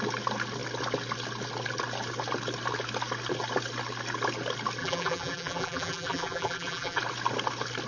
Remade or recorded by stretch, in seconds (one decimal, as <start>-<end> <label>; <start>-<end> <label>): 0.0-4.8 recorded; 4.8-7.0 remade; 7.0-7.9 recorded